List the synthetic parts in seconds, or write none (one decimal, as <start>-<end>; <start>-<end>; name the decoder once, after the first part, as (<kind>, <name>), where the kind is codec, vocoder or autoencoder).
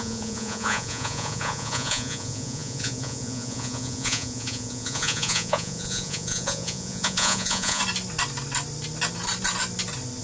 0.0-7.8 (vocoder, Vocos)